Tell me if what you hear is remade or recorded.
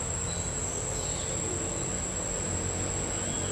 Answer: recorded